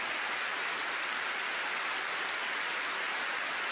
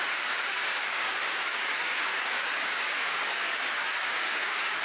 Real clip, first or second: first